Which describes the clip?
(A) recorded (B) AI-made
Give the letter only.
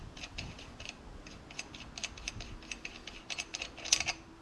A